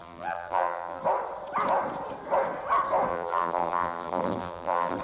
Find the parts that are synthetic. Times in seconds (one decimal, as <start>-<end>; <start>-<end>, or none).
0.0-1.0; 3.1-5.0